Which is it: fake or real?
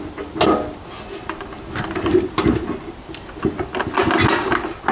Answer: real